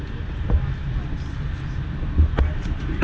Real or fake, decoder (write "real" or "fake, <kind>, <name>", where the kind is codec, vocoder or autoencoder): real